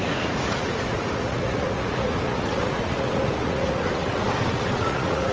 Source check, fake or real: fake